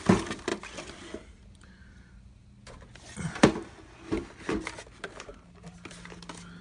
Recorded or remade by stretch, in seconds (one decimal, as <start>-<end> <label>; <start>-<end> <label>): 0.0-6.6 recorded